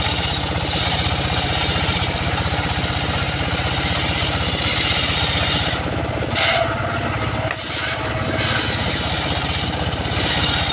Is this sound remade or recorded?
recorded